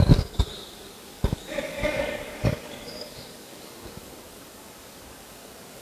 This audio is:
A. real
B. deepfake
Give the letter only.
B